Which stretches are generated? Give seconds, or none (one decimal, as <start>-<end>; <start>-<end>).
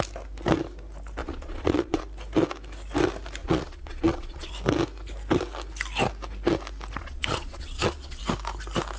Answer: 1.2-2.0; 3.4-4.5; 7.0-8.2